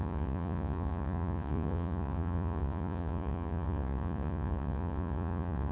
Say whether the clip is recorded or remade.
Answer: remade